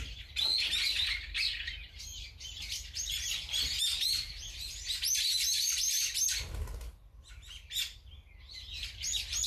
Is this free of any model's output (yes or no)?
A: yes